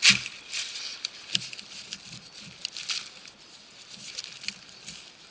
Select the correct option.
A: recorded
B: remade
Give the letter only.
A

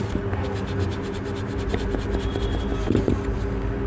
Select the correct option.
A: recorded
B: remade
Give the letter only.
A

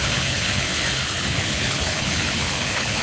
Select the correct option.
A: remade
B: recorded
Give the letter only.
A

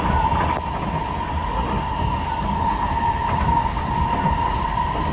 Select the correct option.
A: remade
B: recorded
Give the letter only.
B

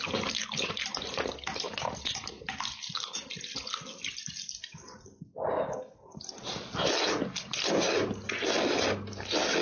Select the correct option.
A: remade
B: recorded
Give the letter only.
B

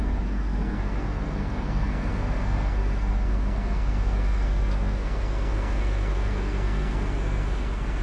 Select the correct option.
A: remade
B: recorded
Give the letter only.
A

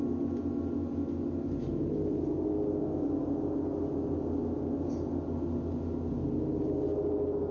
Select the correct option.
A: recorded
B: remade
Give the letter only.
A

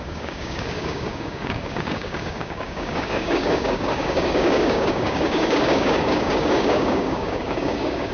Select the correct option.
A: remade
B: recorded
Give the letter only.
A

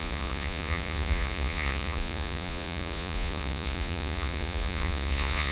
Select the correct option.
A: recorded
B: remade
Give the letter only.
B